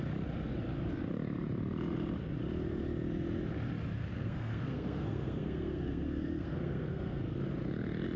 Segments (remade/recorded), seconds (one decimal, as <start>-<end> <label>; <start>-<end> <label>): 0.0-4.0 recorded; 4.0-7.2 remade; 7.2-8.2 recorded